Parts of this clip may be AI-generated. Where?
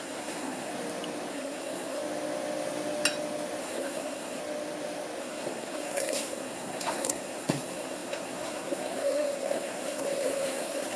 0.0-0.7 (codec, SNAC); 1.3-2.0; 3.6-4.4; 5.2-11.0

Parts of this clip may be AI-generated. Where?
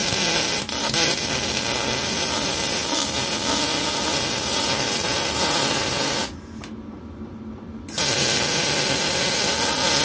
none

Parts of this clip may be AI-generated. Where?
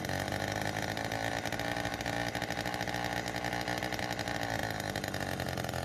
none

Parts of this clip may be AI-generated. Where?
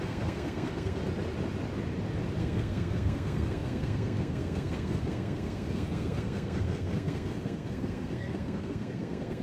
0.0-1.0 (codec, SNAC); 2.4-9.4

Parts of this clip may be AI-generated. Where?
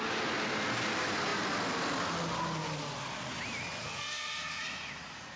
3.8-4.6 (codec, SNAC)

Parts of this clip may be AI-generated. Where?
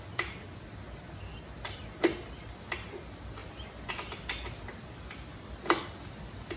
none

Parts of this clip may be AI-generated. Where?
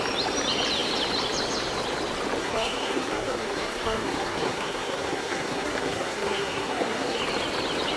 2.4-7.2 (codec, SNAC)